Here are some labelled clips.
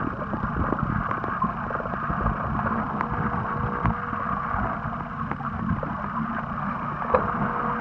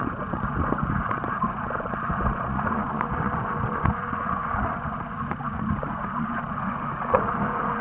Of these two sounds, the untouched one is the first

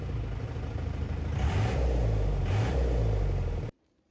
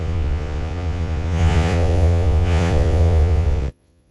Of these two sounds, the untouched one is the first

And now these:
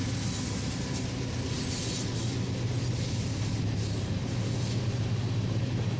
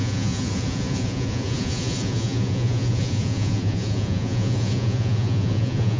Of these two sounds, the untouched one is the first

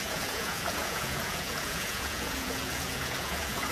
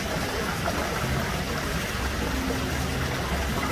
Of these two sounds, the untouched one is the second